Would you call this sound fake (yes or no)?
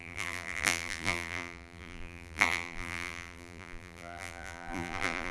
yes